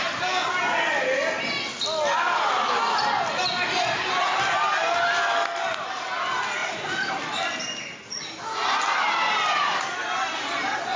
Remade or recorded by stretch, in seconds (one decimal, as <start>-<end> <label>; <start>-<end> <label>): 0.0-6.6 recorded; 6.6-7.1 remade; 7.1-11.0 recorded